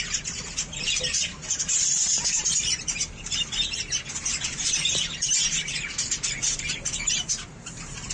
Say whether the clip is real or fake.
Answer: fake